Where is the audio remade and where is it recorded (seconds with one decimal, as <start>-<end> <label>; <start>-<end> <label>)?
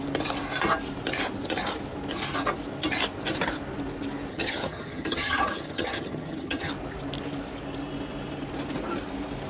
0.0-4.3 recorded; 4.3-6.7 remade; 6.7-9.5 recorded